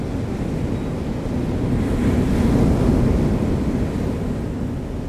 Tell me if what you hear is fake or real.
real